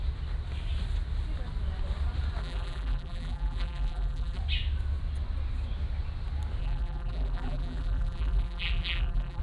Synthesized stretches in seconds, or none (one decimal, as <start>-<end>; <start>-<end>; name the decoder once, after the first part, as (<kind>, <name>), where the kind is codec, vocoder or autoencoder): 2.4-4.4 (vocoder, BigVGAN v2); 6.6-9.4